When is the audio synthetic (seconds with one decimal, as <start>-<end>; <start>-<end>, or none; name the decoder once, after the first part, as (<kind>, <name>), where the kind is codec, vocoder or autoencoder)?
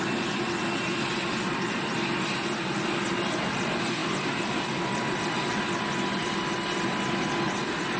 none